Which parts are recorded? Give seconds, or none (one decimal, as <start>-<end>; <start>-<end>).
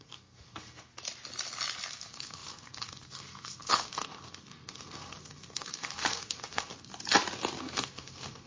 0.9-1.9; 6.9-7.6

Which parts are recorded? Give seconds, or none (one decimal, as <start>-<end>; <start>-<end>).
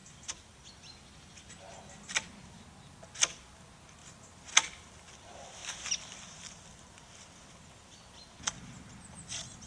0.7-4.0; 4.9-5.6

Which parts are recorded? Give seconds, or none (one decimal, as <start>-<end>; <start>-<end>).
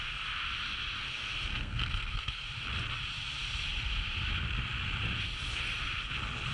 0.0-1.5; 2.4-6.5